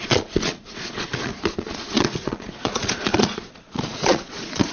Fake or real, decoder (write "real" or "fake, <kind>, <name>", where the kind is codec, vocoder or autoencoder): fake, vocoder, Vocos